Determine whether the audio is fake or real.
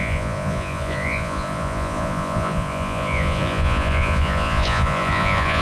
fake